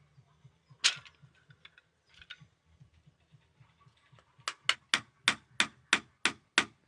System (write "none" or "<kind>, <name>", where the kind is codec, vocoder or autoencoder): none